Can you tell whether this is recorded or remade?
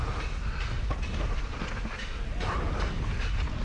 recorded